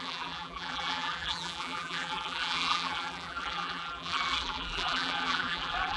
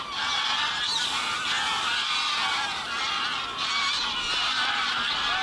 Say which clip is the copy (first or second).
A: first